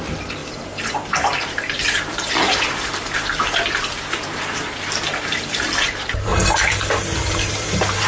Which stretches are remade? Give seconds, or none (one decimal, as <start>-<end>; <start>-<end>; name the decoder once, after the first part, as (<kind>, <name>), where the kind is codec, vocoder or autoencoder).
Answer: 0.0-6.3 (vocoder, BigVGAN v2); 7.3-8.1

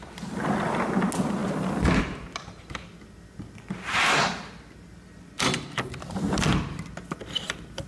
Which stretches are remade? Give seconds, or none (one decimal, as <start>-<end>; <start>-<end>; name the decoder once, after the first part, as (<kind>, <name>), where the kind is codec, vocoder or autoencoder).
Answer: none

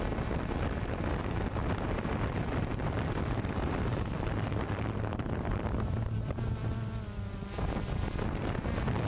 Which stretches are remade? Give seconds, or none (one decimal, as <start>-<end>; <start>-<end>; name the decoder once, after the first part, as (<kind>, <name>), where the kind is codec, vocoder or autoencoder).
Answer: 1.6-5.5 (vocoder, BigVGAN v2)

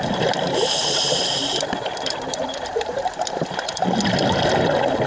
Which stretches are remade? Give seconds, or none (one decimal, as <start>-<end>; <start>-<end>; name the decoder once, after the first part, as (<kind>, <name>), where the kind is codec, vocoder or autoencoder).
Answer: 1.4-4.1 (vocoder, BigVGAN v2)

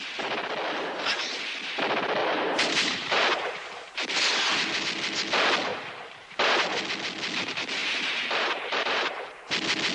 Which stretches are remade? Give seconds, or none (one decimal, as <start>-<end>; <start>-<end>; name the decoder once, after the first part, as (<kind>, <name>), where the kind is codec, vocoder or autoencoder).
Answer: 2.2-4.1 (vocoder, BigVGAN v2); 5.7-6.8; 7.8-9.4